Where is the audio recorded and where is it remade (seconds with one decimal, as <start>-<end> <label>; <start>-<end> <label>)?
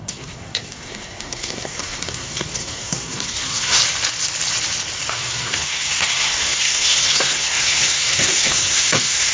0.0-3.8 remade; 3.8-5.1 recorded; 5.1-9.3 remade